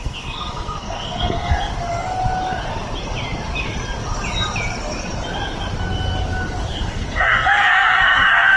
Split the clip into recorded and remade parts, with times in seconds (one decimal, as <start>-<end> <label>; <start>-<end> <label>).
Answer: 0.0-1.7 remade; 1.7-6.7 recorded; 6.7-8.6 remade